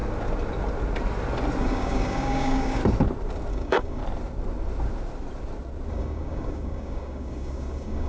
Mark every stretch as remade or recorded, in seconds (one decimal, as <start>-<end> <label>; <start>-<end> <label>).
0.0-1.6 recorded; 1.6-2.8 remade; 2.8-3.5 recorded; 3.5-4.0 remade; 4.0-5.9 recorded; 5.9-8.1 remade